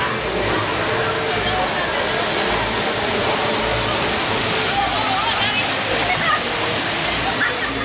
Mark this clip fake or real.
real